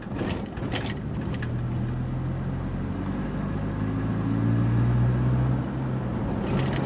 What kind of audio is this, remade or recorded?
recorded